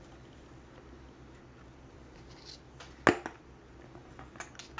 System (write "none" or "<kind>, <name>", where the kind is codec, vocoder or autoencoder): none